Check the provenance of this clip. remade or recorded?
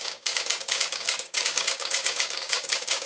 remade